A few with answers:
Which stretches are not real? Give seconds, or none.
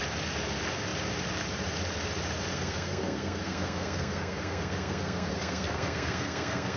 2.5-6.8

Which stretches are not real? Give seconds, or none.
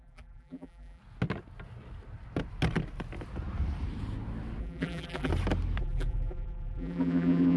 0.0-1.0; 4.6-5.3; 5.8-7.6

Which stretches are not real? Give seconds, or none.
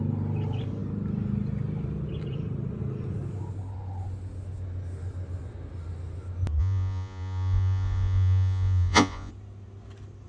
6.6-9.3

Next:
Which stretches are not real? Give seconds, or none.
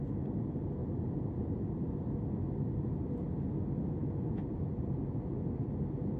0.8-1.6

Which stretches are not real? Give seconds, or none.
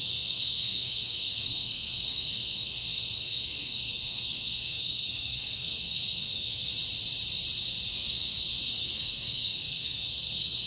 0.0-6.7; 7.9-10.7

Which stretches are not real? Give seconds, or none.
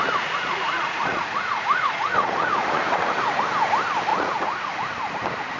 0.0-3.4; 4.1-4.7